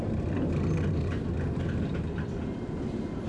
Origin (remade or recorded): recorded